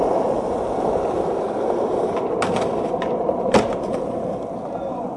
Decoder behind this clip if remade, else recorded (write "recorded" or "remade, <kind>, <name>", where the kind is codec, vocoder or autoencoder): recorded